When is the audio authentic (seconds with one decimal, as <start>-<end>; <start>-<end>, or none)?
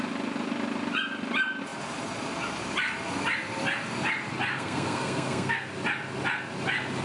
0.0-4.5; 5.7-7.0